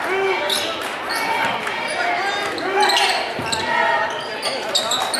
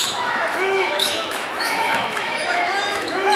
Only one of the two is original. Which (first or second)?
first